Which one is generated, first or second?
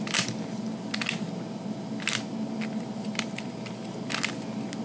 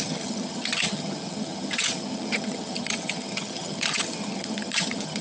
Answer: second